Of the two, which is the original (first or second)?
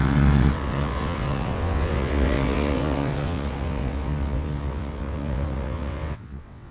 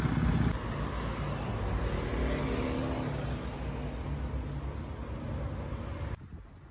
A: second